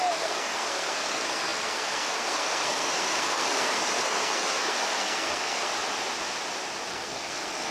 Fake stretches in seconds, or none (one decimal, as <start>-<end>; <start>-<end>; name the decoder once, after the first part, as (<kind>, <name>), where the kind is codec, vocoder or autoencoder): 0.0-5.7 (codec, SNAC); 6.9-7.7